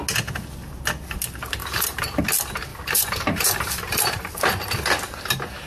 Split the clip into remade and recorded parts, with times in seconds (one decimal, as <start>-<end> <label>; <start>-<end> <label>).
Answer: 0.0-1.6 recorded; 1.6-2.2 remade; 2.2-2.7 recorded; 2.7-4.4 remade; 4.4-5.7 recorded